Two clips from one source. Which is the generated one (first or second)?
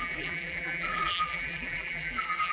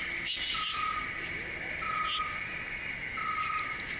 first